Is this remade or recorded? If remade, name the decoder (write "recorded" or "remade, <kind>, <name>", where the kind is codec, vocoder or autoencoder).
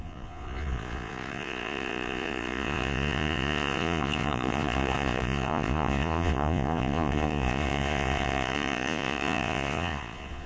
remade, vocoder, Vocos